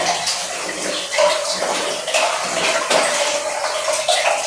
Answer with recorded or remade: recorded